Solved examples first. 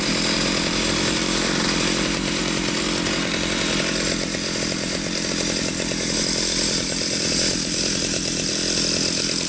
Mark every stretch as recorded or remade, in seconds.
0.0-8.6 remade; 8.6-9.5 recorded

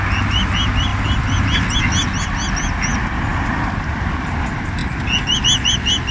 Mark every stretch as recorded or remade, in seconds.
0.0-3.3 recorded; 3.3-4.1 remade; 4.1-6.1 recorded